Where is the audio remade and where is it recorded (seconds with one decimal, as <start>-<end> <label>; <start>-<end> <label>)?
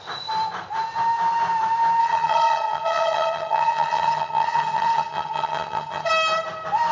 0.0-2.0 recorded; 2.0-6.1 remade; 6.1-6.9 recorded